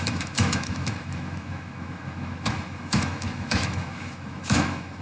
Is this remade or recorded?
remade